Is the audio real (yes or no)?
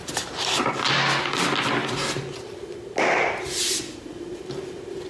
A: yes